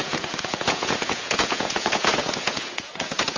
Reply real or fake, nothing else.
fake